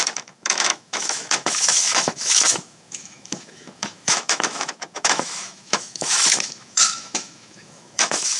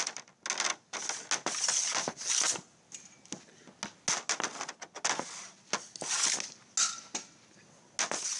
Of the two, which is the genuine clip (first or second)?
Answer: second